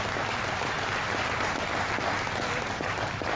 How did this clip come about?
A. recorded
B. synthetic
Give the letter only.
A